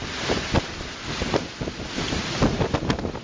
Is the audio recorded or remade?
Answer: recorded